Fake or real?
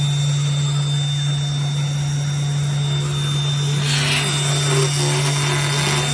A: real